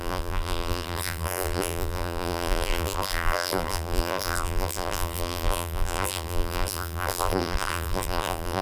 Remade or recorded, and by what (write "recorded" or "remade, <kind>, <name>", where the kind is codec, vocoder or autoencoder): remade, vocoder, BigVGAN v2